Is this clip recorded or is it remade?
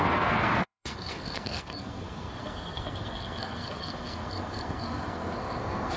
remade